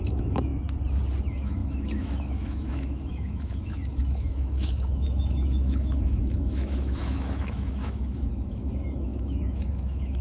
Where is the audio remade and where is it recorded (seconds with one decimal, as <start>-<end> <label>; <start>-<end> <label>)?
0.0-0.5 remade; 0.5-1.2 recorded; 1.2-10.2 remade